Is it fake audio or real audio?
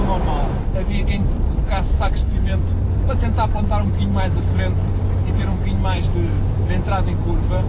fake